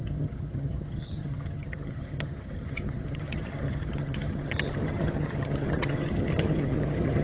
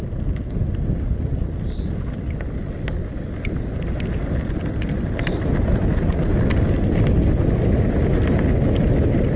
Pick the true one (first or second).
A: second